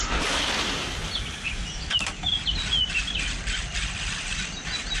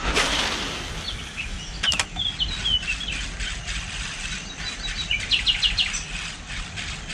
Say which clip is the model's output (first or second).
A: first